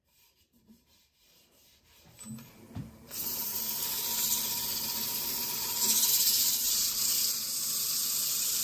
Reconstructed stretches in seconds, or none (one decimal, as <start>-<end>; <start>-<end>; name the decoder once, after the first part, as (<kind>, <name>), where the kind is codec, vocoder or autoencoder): 0.0-3.5 (vocoder, BigVGAN v2); 6.1-8.6